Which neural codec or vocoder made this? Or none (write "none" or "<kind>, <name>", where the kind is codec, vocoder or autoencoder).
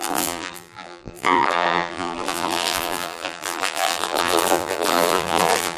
vocoder, BigVGAN v2